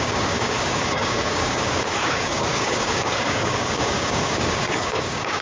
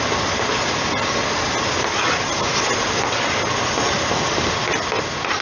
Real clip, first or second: second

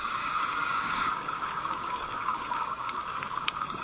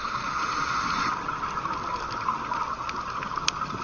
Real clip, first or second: second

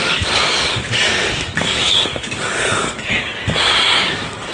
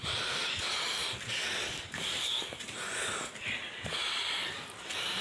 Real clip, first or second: second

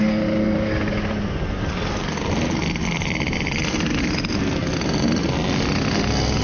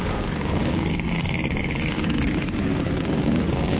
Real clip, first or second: first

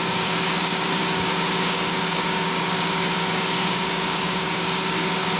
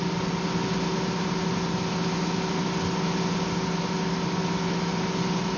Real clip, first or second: second